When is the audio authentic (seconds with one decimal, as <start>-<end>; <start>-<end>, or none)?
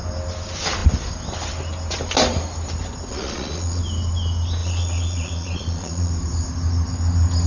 0.0-3.1; 3.8-4.6; 6.1-7.5